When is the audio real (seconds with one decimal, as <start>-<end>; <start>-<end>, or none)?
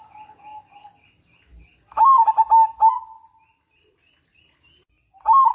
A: 0.0-5.5